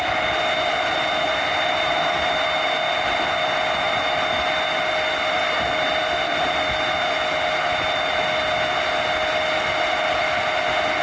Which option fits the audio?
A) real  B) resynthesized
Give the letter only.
A